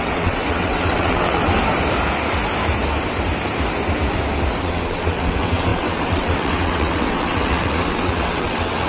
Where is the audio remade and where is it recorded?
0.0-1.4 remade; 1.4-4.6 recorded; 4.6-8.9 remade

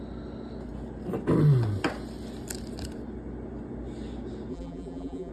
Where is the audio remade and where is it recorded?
0.0-4.5 recorded; 4.5-5.3 remade